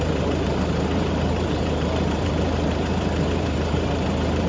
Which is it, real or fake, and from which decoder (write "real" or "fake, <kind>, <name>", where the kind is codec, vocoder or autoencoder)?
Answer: fake, vocoder, BigVGAN v2